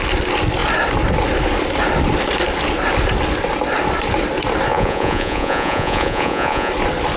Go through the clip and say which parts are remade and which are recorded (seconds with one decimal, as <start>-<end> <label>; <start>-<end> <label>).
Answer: 0.0-4.7 recorded; 4.7-6.7 remade; 6.7-7.2 recorded